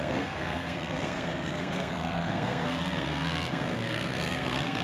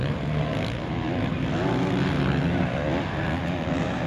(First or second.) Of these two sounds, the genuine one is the second